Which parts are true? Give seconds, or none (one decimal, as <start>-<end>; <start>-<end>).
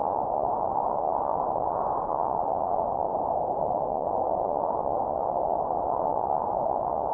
3.1-3.6